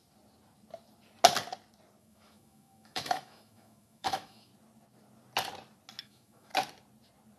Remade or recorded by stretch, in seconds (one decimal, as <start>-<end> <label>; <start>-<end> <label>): 0.0-2.0 recorded; 2.0-4.5 remade; 4.5-6.0 recorded; 6.0-6.5 remade; 6.5-7.4 recorded